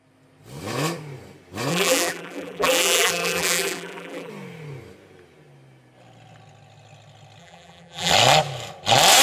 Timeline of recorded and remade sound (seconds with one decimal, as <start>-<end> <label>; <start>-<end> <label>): 0.0-1.7 recorded; 1.7-4.3 remade; 4.3-7.4 recorded; 7.4-8.1 remade; 8.1-9.2 recorded